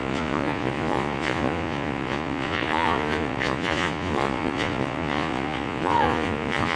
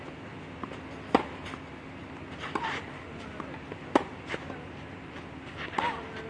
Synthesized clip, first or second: first